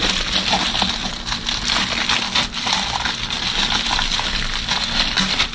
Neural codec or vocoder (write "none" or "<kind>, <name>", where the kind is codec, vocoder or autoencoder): none